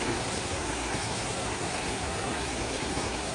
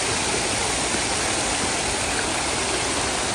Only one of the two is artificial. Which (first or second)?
first